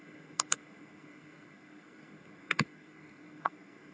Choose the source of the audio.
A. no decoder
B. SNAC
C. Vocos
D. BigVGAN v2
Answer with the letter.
B